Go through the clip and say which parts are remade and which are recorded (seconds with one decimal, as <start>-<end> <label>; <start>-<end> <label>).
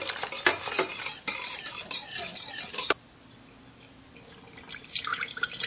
0.0-5.7 recorded